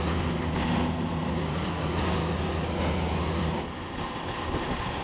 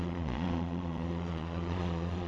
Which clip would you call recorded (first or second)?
first